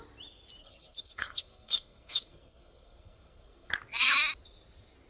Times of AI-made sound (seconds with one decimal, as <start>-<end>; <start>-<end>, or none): 0.6-3.7